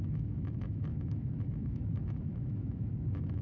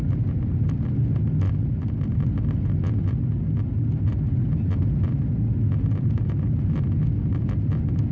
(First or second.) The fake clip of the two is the first